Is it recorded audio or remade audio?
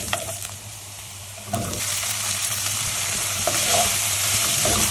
remade